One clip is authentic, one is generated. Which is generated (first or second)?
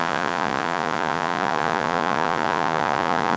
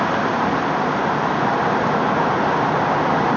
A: first